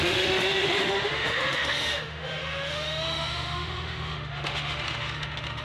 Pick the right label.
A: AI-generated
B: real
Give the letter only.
A